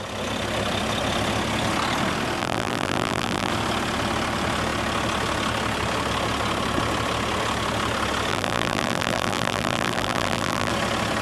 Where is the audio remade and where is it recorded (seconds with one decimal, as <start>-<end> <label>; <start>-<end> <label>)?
0.0-2.4 recorded; 2.4-3.5 remade; 3.5-8.3 recorded; 8.3-10.7 remade; 10.7-11.2 recorded